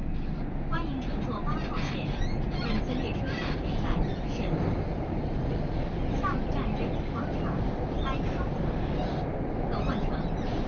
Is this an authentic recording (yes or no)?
yes